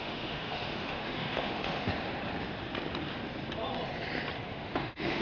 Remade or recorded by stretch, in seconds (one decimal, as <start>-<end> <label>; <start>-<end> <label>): 0.0-1.9 remade; 1.9-4.5 recorded; 4.5-5.2 remade